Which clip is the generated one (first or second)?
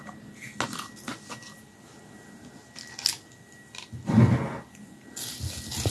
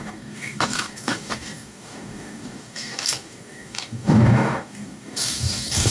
second